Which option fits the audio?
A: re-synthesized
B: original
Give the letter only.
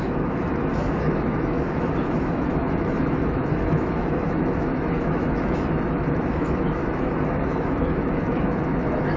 A